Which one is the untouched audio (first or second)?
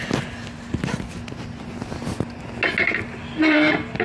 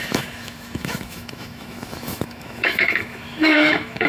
first